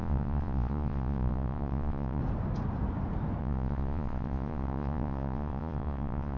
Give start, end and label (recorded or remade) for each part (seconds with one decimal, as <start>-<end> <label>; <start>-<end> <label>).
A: 0.0-2.2 remade; 2.2-3.4 recorded; 3.4-6.4 remade